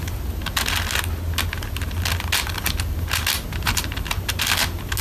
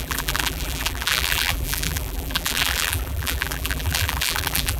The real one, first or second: first